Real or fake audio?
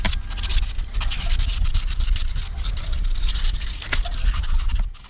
real